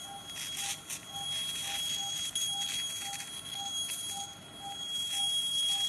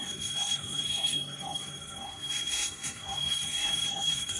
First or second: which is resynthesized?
second